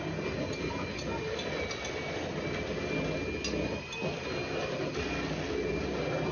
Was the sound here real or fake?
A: real